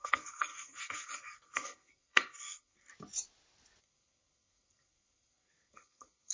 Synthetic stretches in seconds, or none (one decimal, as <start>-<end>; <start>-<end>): 0.0-2.9; 3.8-6.3